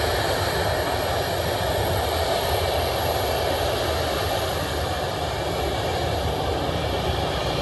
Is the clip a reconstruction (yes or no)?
no